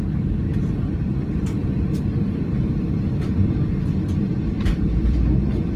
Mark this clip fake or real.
fake